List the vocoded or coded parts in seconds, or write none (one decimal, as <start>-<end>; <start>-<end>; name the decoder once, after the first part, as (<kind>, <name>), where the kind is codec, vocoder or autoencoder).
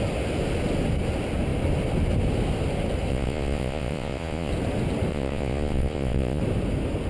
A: 3.1-4.5 (vocoder, Vocos); 5.1-6.4